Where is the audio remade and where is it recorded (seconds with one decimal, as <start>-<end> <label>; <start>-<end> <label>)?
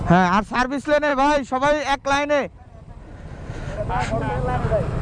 0.0-5.0 recorded